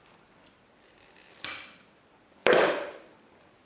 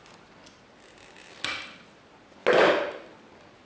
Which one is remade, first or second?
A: first